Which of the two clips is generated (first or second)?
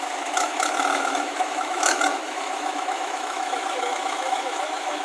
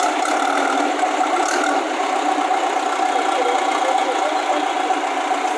first